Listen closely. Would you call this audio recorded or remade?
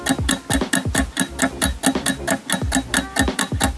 recorded